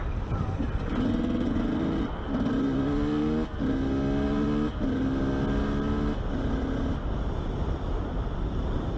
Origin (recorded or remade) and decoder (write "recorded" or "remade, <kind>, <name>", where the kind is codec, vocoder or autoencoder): recorded